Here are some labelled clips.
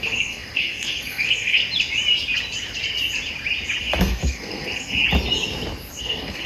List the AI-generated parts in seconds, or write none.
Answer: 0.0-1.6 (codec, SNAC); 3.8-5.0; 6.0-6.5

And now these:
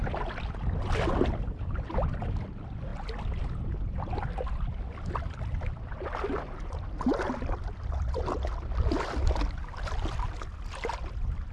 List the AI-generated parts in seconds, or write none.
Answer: none

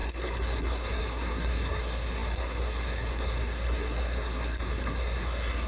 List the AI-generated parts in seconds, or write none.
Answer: 0.0-5.7 (codec, SNAC)

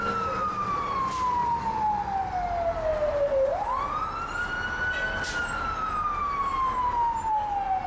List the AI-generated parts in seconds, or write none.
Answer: none

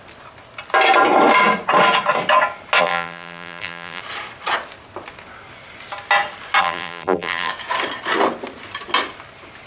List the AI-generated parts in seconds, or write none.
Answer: 2.8-4.0 (vocoder, BigVGAN v2); 6.6-7.5

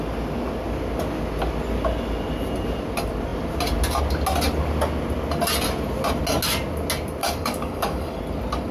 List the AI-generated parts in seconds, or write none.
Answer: 7.2-8.2 (codec, DAC)